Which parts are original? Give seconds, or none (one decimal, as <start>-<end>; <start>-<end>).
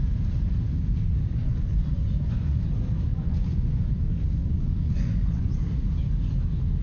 0.0-1.4; 2.7-3.1; 3.9-4.4; 5.6-6.8